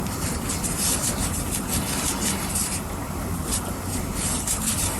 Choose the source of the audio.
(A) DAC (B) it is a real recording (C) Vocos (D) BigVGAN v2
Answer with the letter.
D